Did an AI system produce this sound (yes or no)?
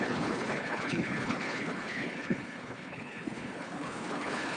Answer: yes